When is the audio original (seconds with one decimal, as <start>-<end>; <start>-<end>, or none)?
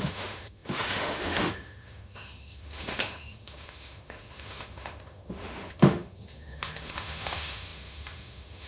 none